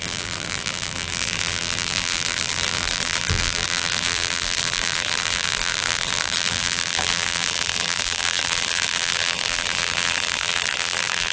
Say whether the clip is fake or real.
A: fake